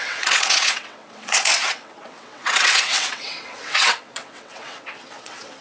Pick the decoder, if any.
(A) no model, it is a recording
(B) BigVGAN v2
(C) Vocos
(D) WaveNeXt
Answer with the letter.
D